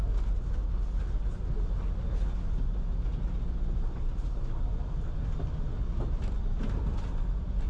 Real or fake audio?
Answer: real